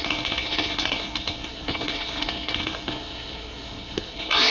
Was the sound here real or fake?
fake